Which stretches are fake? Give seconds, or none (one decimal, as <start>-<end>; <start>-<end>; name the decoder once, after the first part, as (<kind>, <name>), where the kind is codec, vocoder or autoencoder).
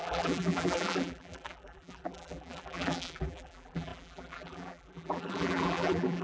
0.0-6.2 (vocoder, BigVGAN v2)